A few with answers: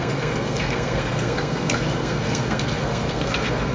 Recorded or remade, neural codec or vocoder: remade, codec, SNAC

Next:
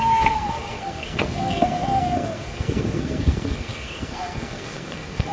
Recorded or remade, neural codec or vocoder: remade, codec, SNAC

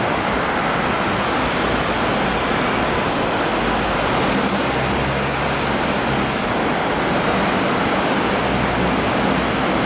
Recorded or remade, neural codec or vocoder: recorded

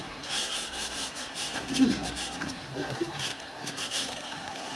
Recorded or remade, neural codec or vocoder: remade, codec, SNAC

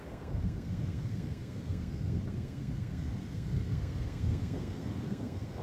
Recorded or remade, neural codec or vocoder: remade, codec, SNAC